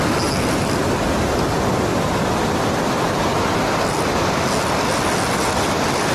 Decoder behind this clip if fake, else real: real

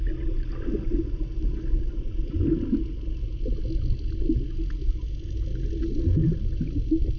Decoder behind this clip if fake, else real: real